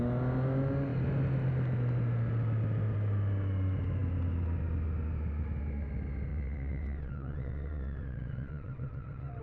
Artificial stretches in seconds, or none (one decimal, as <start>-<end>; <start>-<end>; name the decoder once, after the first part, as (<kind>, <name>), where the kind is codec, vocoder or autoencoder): 6.3-9.4 (vocoder, WaveNeXt)

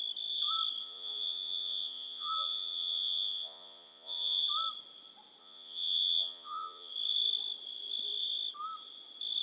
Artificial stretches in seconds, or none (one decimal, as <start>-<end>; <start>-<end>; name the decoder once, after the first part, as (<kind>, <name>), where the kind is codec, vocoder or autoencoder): 0.8-4.4 (vocoder, Vocos); 5.4-6.9